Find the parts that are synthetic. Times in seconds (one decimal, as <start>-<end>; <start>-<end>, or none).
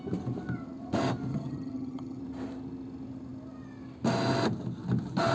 1.3-2.2